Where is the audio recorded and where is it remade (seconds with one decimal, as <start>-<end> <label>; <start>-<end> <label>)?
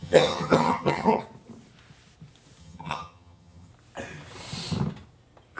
0.0-1.2 remade; 1.2-2.6 recorded; 2.6-3.7 remade; 3.7-5.6 recorded